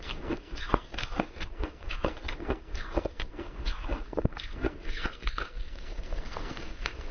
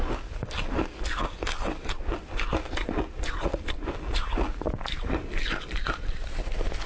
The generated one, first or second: first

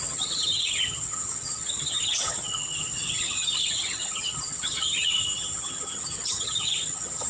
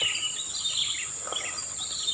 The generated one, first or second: first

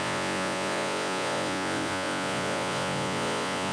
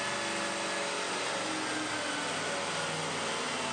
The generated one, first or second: first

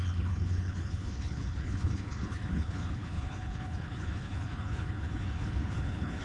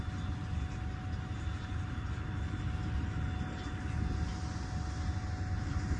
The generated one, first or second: first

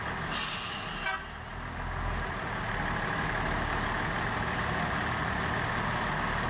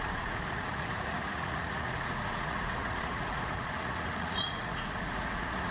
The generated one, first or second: second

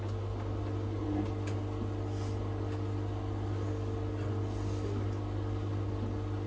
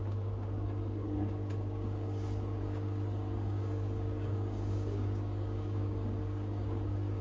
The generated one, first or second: second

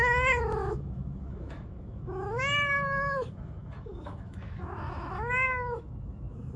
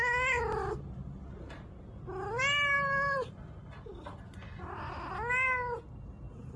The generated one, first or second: first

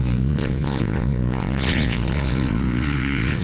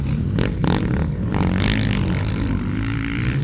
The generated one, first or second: first